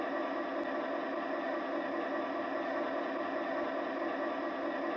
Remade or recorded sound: recorded